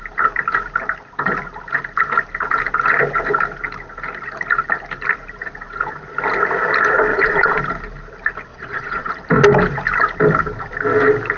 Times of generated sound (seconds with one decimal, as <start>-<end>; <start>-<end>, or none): 7.1-7.6; 8.5-9.1